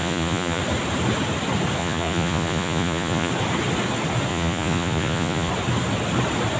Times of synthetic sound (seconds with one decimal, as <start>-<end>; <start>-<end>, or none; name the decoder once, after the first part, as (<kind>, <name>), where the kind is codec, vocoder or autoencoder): 0.0-0.6 (vocoder, Vocos); 1.8-3.3; 4.3-5.5